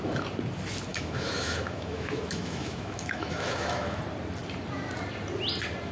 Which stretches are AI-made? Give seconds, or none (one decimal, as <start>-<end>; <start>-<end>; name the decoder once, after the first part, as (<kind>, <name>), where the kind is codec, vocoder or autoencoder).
0.9-4.0 (autoencoder, DAC-VAE)